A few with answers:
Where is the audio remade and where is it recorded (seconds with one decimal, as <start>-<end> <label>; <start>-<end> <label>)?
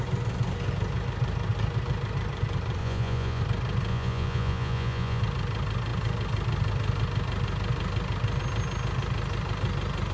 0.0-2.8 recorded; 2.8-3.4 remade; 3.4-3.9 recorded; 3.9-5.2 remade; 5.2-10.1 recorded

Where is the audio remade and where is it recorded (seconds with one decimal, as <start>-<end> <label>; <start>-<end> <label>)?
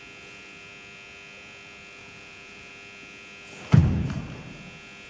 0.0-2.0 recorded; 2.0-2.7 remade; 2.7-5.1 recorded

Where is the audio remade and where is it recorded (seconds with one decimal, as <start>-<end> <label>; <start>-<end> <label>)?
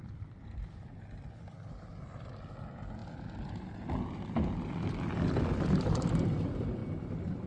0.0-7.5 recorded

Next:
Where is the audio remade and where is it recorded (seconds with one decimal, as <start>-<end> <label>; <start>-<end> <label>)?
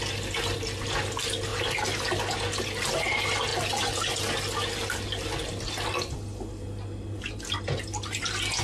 0.0-8.6 recorded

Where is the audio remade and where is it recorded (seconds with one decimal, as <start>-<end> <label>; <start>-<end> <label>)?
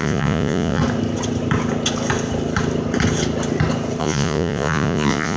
0.0-0.8 remade; 0.8-4.0 recorded; 4.0-5.4 remade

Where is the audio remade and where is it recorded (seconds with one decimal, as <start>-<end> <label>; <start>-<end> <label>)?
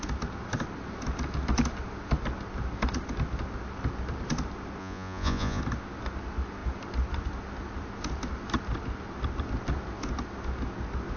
0.0-4.8 recorded; 4.8-5.6 remade; 5.6-11.2 recorded